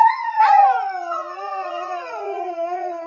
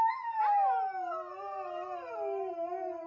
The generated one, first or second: first